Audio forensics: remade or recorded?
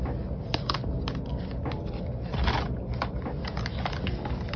recorded